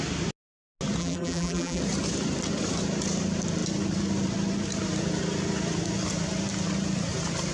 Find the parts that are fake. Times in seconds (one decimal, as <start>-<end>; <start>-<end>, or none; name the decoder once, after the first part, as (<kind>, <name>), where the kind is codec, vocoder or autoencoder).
1.0-1.8 (vocoder, BigVGAN v2)